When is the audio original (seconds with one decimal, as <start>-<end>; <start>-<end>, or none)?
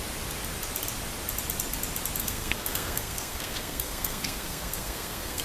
0.0-2.2